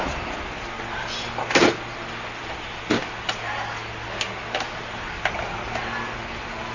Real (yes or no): yes